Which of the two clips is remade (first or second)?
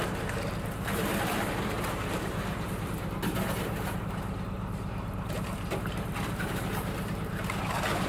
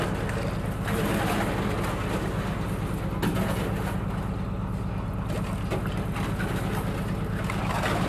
first